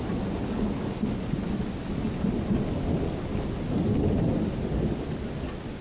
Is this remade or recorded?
recorded